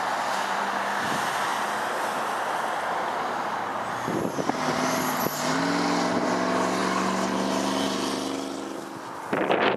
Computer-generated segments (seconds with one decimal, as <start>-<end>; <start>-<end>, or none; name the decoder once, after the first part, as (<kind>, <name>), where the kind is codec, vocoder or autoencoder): none